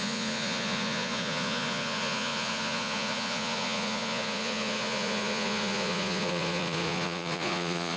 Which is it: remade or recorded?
remade